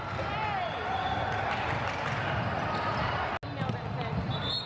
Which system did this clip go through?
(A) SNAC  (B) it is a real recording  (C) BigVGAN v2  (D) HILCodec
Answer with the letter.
B